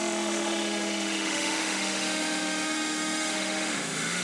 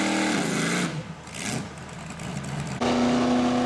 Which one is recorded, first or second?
second